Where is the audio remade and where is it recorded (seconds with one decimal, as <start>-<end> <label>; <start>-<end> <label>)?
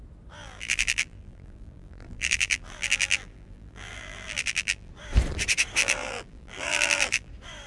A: 0.0-0.4 recorded; 0.4-4.9 remade; 4.9-5.8 recorded; 5.8-7.3 remade; 7.3-7.7 recorded